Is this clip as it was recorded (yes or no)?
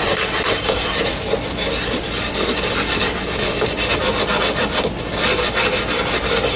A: yes